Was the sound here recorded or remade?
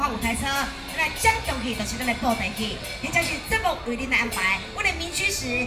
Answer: recorded